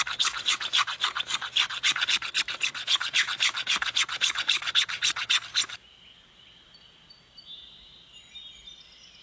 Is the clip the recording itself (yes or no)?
yes